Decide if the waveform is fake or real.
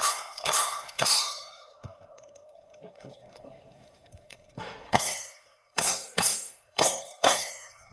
fake